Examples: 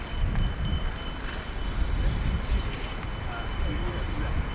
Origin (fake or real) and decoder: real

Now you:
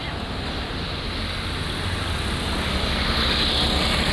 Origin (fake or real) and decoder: real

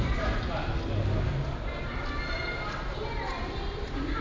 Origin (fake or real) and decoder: real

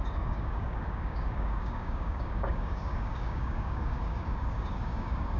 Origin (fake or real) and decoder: fake, codec, DAC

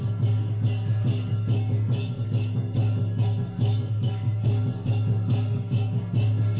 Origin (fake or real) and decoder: fake, codec, DAC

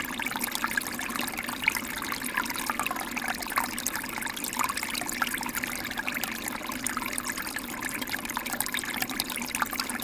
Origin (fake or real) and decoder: real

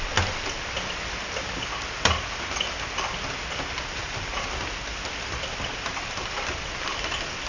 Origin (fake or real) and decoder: real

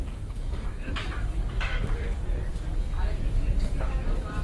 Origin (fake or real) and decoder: fake, codec, DAC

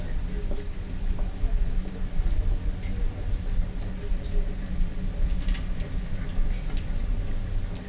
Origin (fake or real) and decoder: real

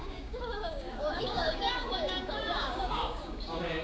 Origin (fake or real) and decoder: fake, codec, DAC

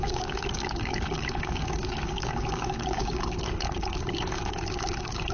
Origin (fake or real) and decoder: fake, codec, DAC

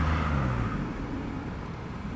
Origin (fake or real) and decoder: real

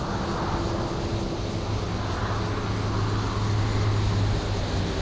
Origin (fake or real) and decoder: real